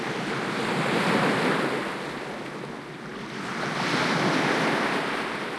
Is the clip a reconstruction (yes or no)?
no